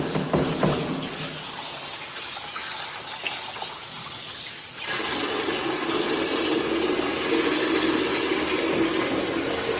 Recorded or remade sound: recorded